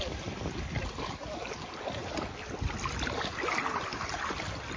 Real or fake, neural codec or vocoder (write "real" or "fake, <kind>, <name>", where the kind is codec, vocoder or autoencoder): real